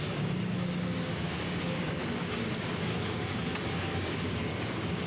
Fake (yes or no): yes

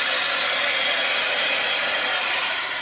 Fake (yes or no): no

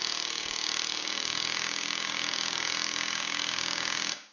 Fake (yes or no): yes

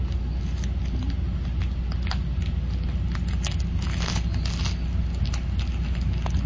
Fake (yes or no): no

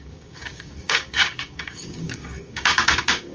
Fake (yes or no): yes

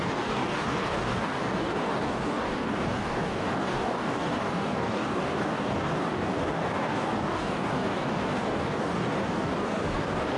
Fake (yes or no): yes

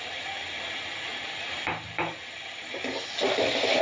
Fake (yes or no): no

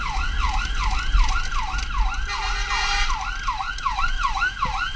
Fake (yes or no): no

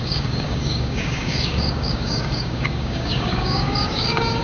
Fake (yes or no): yes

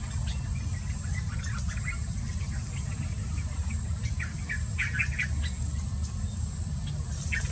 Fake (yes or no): no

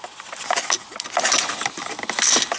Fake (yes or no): no